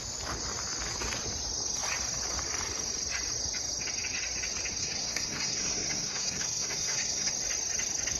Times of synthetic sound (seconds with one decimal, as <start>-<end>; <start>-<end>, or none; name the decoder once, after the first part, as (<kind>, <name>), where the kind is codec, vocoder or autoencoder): 4.8-7.3 (codec, SNAC)